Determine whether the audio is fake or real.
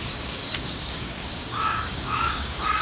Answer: fake